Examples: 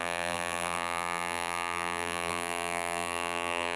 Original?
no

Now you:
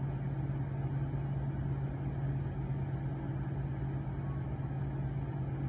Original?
yes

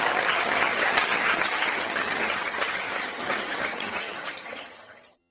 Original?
no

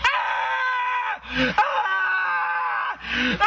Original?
yes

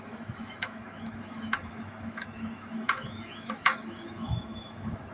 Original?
no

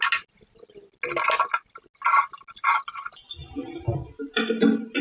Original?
yes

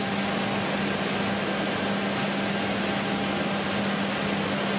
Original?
yes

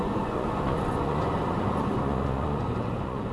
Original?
no